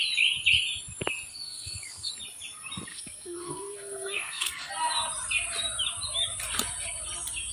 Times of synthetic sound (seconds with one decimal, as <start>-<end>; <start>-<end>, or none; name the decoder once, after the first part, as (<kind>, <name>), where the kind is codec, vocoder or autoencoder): 1.3-2.1 (codec, SNAC); 2.9-4.7